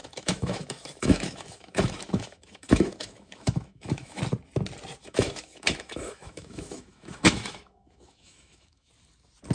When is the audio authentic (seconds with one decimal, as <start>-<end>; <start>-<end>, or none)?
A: 4.2-5.0; 8.9-9.5